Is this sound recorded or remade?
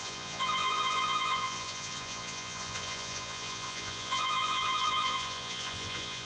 remade